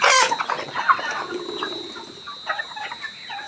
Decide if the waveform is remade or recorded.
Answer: recorded